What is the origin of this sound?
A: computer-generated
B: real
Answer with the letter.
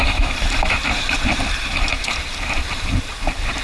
A